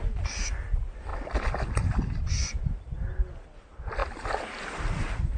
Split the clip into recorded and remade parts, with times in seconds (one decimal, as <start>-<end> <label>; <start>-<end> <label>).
0.0-5.4 recorded